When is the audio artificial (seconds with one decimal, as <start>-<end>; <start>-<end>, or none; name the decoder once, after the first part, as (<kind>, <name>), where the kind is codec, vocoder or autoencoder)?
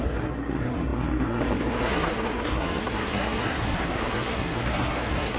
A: 0.0-5.4 (codec, SNAC)